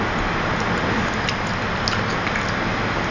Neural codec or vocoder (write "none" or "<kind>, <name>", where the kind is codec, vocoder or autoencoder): none